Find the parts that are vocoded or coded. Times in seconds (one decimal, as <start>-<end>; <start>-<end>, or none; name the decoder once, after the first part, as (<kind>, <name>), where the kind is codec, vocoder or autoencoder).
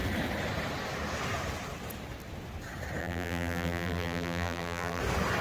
3.0-5.0 (vocoder, BigVGAN v2)